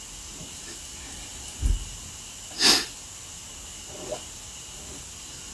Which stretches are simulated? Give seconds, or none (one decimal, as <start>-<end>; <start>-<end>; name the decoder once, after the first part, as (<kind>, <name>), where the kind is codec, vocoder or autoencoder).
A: none